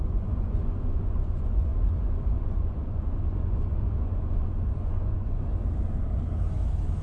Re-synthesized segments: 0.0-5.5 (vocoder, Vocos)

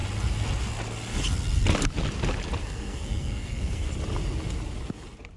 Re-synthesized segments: 2.6-3.9 (codec, SNAC)